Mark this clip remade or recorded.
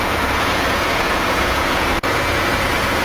remade